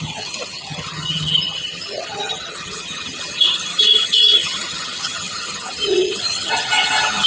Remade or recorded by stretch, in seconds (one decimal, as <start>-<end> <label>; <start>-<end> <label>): 0.0-7.3 remade

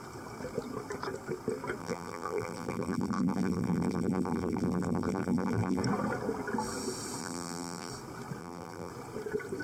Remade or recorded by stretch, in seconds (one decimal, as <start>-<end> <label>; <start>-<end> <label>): 0.0-1.8 recorded; 1.8-5.8 remade; 5.8-7.2 recorded; 7.2-7.9 remade; 7.9-8.4 recorded; 8.4-8.9 remade; 8.9-9.6 recorded

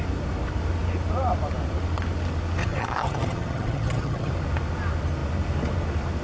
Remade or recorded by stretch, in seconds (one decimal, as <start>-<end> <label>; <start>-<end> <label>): 0.0-2.6 recorded; 2.6-4.3 remade; 4.3-6.2 recorded